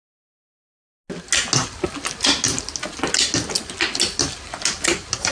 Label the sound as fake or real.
real